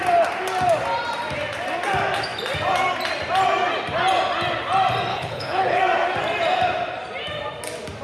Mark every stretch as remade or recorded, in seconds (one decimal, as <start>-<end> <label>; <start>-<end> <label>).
0.0-5.1 recorded; 5.1-5.8 remade; 5.8-8.0 recorded